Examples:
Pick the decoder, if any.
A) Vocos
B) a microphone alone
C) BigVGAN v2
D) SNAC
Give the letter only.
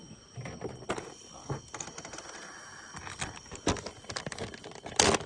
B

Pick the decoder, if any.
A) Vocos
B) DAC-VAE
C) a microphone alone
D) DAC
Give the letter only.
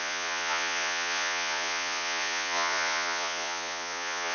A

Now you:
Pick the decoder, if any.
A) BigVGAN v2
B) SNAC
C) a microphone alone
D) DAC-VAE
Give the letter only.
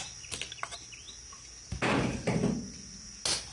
C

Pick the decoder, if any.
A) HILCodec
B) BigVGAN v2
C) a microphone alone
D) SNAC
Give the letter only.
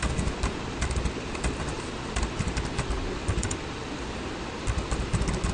C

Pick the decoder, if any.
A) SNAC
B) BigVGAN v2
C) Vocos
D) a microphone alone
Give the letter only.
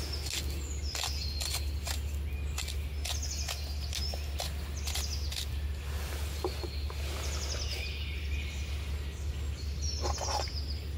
D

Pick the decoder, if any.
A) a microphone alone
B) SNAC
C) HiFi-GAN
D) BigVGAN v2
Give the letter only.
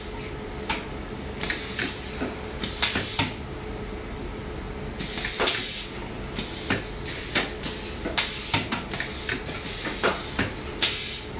A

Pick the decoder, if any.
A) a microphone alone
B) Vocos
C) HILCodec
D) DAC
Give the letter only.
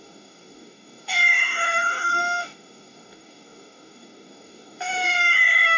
D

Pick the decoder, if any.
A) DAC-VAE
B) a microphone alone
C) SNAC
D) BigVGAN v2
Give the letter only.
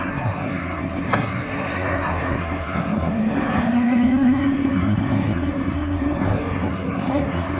C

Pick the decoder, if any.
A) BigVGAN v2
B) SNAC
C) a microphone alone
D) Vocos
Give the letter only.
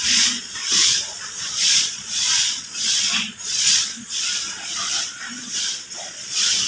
D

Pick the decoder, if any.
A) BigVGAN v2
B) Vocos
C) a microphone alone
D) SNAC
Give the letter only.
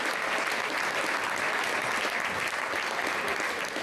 C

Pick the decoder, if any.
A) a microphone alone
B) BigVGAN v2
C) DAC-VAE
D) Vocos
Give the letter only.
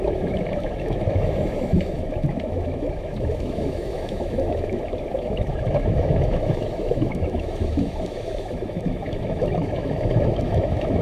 C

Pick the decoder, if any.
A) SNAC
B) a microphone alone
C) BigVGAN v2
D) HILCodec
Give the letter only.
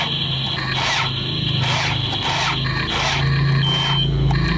B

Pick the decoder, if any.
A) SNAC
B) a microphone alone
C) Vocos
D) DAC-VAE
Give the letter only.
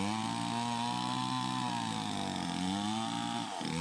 B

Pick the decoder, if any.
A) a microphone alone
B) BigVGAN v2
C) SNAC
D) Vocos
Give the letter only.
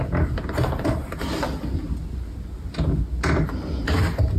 A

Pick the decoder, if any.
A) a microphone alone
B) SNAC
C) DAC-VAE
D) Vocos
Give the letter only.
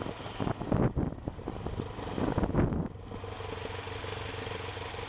A